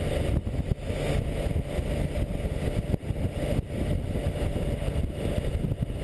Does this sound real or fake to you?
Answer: real